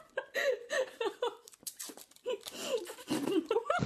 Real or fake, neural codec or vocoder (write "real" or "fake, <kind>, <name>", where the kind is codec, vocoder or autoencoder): fake, vocoder, BigVGAN v2